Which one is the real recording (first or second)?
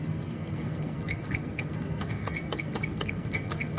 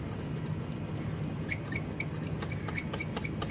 second